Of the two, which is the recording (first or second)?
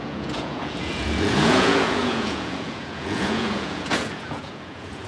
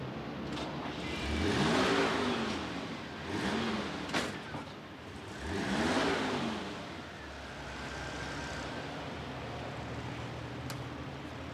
second